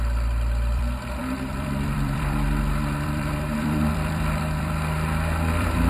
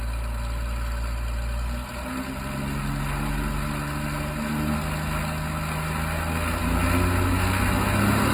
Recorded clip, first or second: second